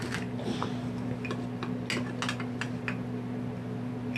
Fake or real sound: real